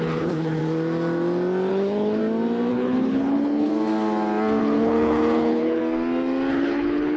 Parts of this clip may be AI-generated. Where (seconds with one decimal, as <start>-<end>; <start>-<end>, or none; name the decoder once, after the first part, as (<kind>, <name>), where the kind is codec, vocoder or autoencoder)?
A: 0.0-0.6 (codec, HILCodec); 1.7-2.2; 2.7-3.7; 4.6-5.8; 6.5-7.2